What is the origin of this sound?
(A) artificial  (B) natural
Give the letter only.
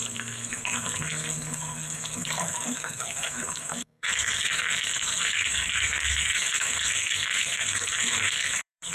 A